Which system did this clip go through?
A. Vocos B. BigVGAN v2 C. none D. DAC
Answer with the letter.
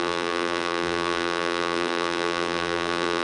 B